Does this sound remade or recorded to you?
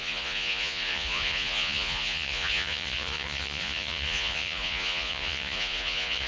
remade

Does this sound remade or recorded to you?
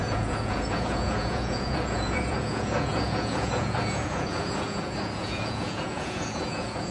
remade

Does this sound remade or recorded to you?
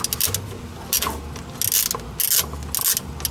recorded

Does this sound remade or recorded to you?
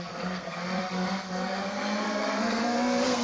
remade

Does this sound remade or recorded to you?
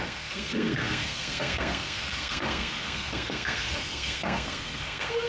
remade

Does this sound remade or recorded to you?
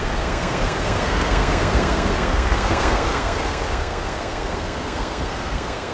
remade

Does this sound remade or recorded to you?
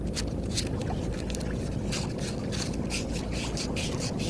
recorded